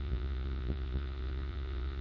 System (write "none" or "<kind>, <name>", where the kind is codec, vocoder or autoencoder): vocoder, Vocos